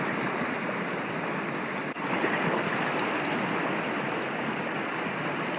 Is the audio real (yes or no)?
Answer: yes